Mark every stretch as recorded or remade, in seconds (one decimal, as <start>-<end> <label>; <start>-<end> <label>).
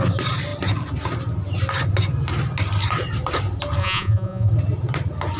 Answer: 0.0-3.8 recorded; 3.8-4.5 remade; 4.5-5.4 recorded